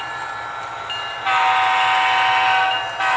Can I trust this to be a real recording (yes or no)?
yes